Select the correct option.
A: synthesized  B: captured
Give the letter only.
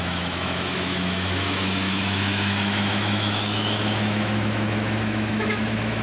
A